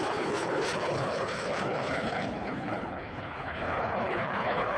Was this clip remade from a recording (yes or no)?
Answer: yes